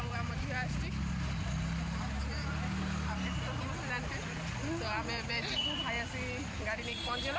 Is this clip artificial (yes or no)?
no